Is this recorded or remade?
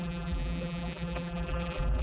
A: remade